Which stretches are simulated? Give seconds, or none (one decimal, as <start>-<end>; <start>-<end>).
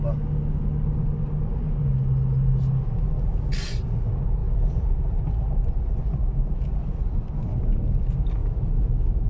4.4-5.0